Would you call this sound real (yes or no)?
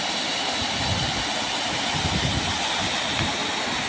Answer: yes